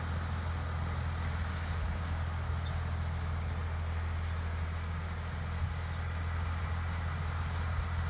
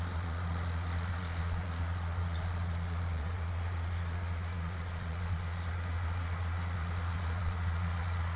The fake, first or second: second